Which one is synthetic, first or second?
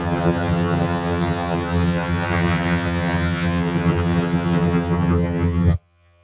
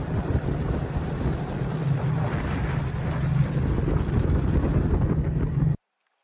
first